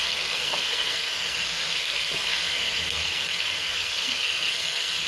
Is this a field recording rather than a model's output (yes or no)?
no